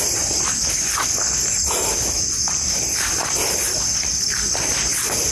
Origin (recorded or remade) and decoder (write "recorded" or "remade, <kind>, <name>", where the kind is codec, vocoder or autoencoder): recorded